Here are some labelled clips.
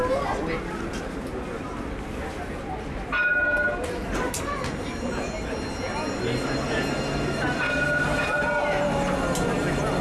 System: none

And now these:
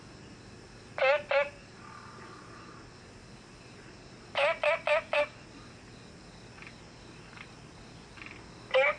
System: none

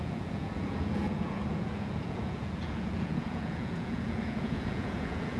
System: vocoder, Vocos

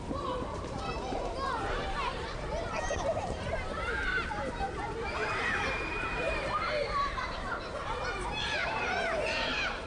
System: vocoder, BigVGAN v2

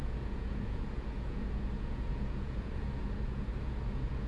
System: vocoder, Vocos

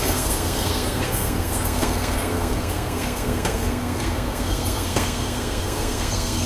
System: codec, SNAC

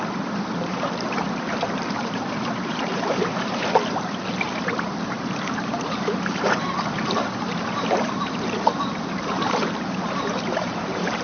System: vocoder, BigVGAN v2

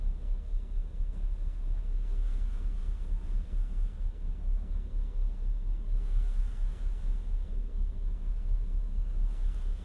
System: codec, SNAC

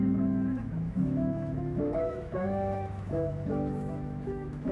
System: autoencoder, DAC-VAE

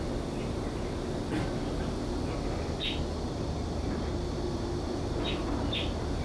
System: none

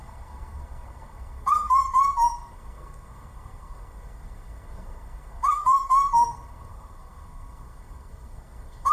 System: codec, SNAC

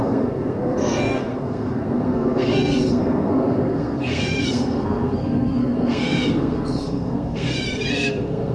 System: codec, SNAC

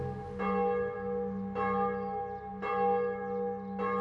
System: none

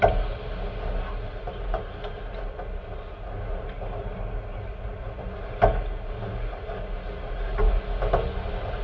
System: none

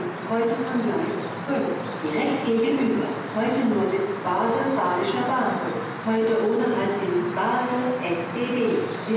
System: none